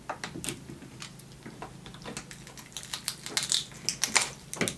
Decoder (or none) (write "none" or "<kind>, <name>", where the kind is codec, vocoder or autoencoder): none